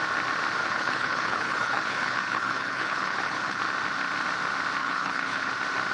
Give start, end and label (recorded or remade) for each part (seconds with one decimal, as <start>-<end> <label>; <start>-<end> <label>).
0.0-0.6 recorded; 0.6-3.6 remade; 3.6-4.8 recorded; 4.8-5.5 remade; 5.5-5.9 recorded